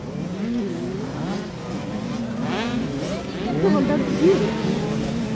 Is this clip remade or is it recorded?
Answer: recorded